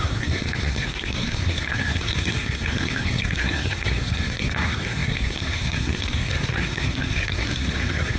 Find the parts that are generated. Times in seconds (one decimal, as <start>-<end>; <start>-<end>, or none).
0.0-8.2